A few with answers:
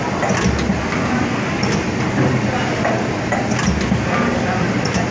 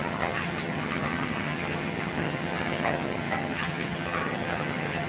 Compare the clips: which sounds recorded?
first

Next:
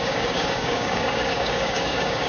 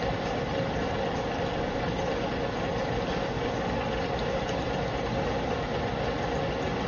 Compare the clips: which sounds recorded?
second